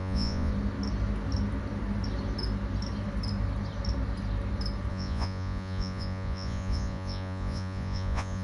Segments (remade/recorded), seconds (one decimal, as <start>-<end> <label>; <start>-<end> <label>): 0.0-0.5 remade; 0.5-4.9 recorded; 4.9-8.4 remade